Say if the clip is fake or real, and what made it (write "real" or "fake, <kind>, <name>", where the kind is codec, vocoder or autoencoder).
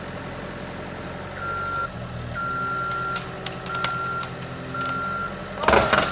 real